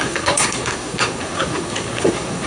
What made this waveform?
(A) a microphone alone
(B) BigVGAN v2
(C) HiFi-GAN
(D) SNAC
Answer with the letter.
D